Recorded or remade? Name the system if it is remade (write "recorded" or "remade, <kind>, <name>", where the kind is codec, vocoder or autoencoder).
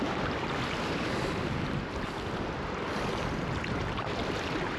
recorded